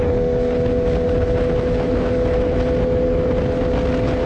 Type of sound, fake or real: real